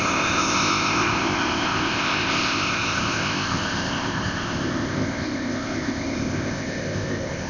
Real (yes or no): no